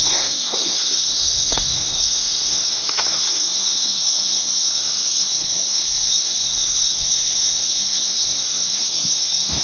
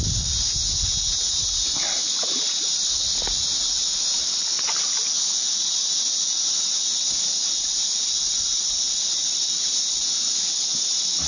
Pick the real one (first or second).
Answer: second